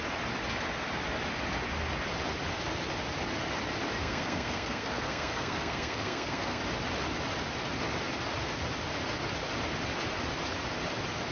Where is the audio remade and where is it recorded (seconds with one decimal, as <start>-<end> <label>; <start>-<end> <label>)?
0.0-4.0 recorded; 4.0-6.6 remade; 6.6-11.3 recorded